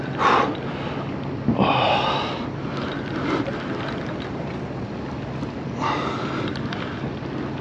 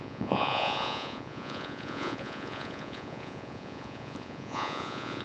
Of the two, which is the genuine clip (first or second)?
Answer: first